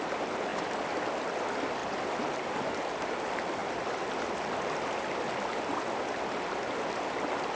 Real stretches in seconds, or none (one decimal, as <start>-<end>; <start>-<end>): 0.0-7.6